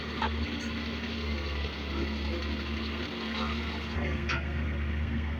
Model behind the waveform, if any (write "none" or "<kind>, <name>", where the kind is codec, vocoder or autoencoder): codec, SNAC